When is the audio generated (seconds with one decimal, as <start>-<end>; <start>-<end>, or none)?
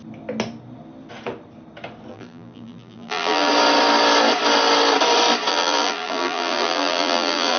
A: 2.1-3.5; 5.5-7.6